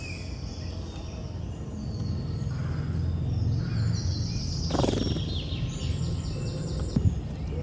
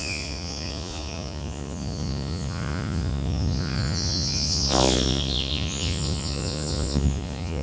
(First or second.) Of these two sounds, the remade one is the second